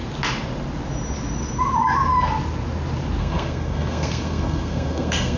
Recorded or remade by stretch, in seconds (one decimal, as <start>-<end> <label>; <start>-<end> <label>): 0.0-3.2 recorded; 3.2-5.4 remade